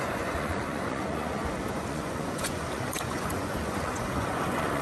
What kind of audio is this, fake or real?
fake